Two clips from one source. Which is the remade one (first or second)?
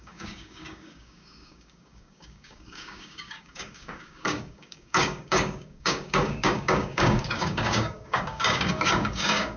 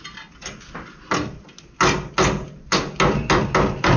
first